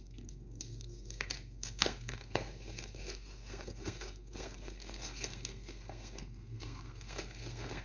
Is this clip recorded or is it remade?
remade